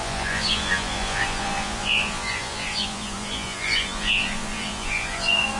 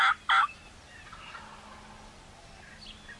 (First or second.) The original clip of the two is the second